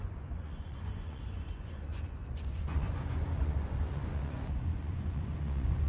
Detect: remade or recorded remade